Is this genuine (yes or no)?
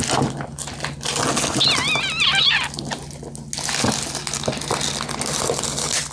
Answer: yes